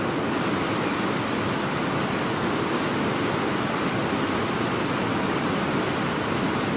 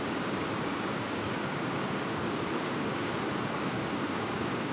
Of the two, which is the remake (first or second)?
second